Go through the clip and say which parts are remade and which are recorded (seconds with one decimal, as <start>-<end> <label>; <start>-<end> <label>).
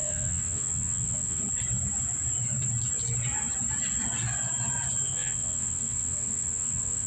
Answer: 0.0-1.4 remade; 1.4-5.1 recorded; 5.1-7.1 remade